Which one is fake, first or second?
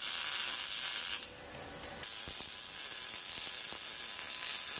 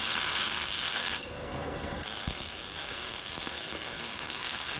second